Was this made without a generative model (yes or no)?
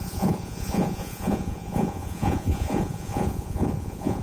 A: no